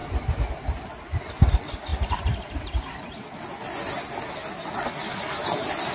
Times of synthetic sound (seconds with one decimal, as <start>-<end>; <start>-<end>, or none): none